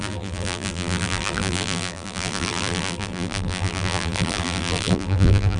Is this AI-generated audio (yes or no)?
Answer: yes